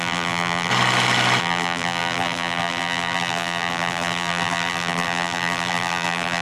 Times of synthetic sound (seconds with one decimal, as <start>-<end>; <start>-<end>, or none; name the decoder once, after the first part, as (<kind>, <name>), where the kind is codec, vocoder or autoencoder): 0.0-0.7 (vocoder, BigVGAN v2); 1.4-6.4